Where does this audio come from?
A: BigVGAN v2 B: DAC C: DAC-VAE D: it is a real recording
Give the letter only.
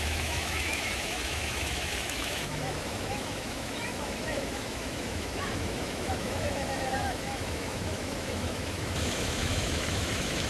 C